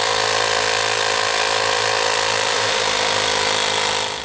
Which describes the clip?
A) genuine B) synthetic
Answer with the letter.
A